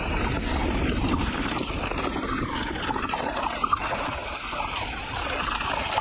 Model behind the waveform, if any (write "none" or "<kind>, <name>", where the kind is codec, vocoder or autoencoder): none